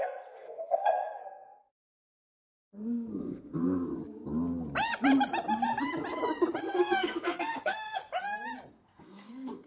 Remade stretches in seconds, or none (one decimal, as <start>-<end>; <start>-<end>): 0.0-3.9; 6.6-8.0; 8.7-9.7